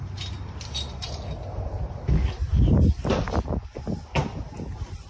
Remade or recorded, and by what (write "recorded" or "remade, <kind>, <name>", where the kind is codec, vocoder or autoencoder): recorded